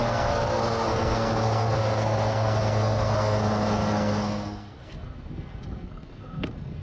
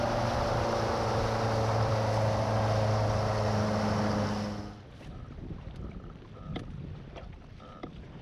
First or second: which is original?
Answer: second